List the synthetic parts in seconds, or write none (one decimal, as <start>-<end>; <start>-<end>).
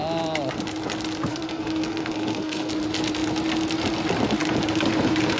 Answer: 1.3-2.7